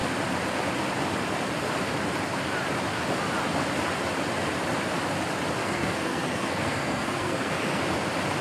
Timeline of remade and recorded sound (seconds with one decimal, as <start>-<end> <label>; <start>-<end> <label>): 0.0-5.6 recorded; 5.6-7.8 remade; 7.8-8.4 recorded